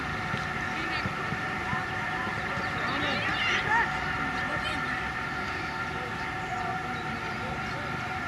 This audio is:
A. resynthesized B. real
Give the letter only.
B